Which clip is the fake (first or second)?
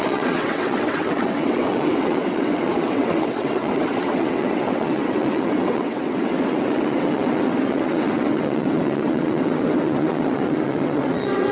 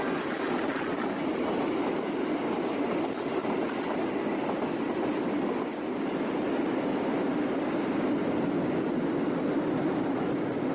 first